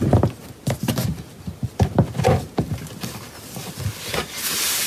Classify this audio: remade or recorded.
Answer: recorded